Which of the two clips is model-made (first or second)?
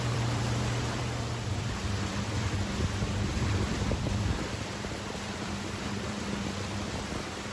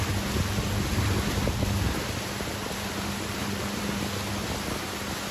first